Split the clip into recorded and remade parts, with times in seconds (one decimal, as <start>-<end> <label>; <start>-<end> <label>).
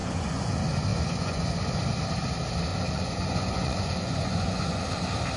0.0-0.5 remade; 0.5-0.9 recorded; 0.9-1.5 remade; 1.5-2.7 recorded; 2.7-4.8 remade; 4.8-5.4 recorded